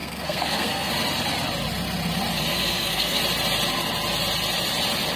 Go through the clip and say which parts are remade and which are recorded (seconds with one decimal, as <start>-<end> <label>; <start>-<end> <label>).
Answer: 0.0-0.9 remade; 0.9-2.5 recorded; 2.5-3.2 remade; 3.2-5.2 recorded